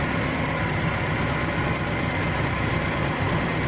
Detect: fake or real real